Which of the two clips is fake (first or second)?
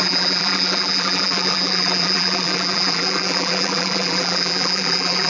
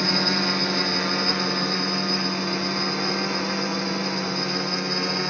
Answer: first